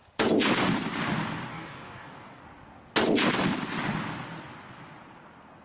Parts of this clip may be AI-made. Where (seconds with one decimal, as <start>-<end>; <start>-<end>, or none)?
1.5-2.4

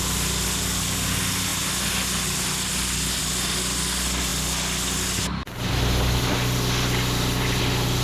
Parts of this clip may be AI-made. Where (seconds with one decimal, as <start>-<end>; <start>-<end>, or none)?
none